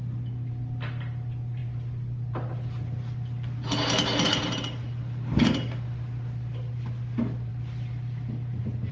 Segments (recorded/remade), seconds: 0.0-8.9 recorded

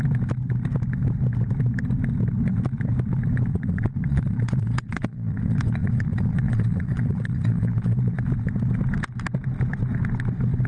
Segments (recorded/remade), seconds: 0.0-3.5 recorded; 3.5-8.2 remade; 8.2-10.7 recorded

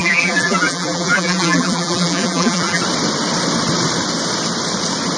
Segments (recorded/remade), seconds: 0.0-2.8 remade; 2.8-5.2 recorded

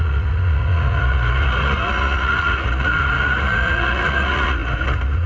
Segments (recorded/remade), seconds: 0.0-5.3 remade

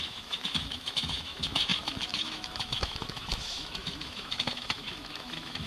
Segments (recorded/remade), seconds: 0.0-5.7 remade

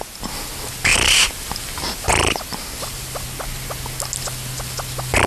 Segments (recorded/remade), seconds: 0.0-5.3 recorded

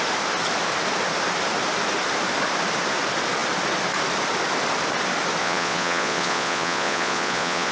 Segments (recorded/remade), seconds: 0.0-5.4 recorded; 5.4-7.7 remade